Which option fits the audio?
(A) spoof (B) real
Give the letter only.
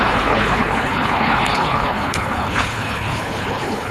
A